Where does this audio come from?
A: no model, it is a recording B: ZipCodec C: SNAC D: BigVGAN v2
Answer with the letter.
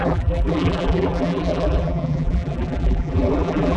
D